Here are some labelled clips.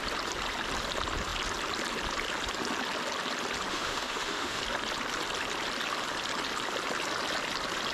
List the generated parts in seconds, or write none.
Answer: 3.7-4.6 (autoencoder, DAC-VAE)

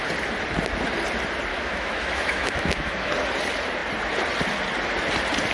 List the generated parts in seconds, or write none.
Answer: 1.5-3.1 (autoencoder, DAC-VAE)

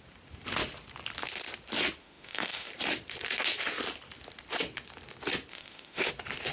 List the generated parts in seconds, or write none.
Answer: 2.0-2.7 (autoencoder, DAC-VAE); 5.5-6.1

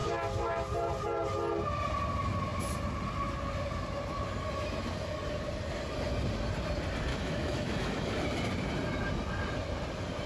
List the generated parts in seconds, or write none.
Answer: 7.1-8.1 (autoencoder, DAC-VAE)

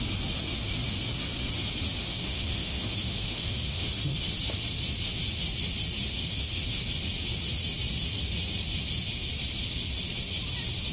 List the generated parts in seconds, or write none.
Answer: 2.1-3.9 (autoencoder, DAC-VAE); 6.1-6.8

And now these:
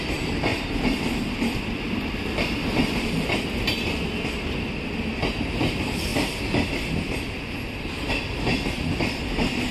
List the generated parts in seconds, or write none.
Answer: none

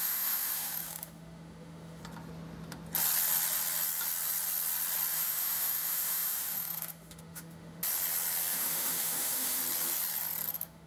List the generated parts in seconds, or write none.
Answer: 0.0-2.0 (autoencoder, DAC-VAE); 5.1-7.8; 8.5-9.6; 10.5-10.9

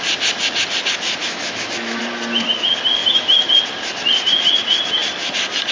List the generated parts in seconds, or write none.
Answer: 1.2-2.0 (autoencoder, DAC-VAE); 3.0-3.5